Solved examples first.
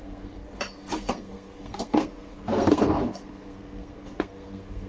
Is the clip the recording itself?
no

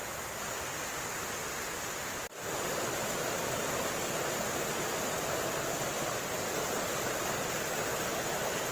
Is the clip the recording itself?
yes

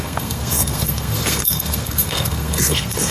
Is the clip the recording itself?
no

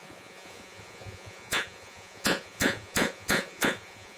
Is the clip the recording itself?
no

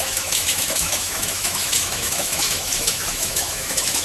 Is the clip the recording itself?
no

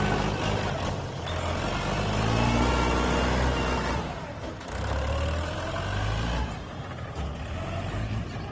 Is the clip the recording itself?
yes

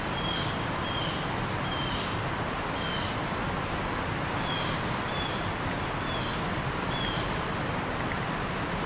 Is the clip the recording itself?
yes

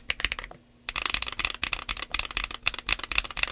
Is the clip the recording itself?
yes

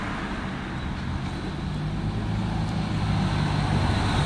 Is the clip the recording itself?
yes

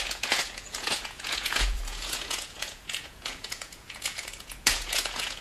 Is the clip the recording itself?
no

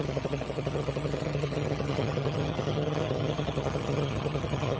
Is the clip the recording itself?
no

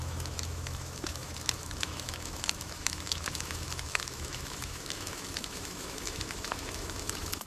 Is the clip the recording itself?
no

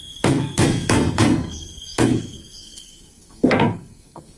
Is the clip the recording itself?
no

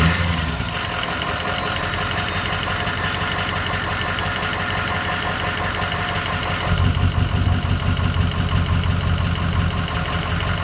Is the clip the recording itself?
yes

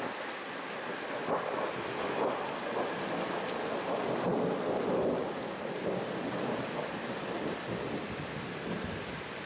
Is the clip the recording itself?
yes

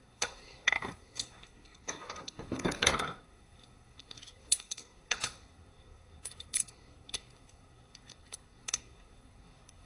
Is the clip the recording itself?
no